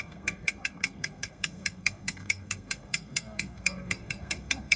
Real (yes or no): no